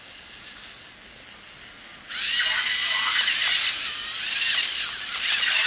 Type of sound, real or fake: real